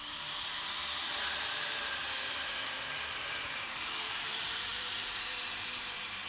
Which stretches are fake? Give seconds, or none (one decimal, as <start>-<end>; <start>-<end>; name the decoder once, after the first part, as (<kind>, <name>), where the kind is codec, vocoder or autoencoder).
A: 0.0-0.8 (vocoder, BigVGAN v2); 3.2-6.3